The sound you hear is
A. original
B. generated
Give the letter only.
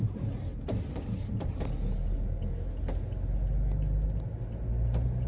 A